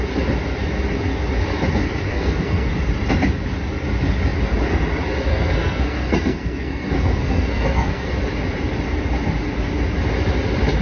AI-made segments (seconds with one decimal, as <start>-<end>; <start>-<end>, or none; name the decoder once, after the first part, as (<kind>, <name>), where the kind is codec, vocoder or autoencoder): 2.1-2.7 (codec, SNAC); 5.3-8.1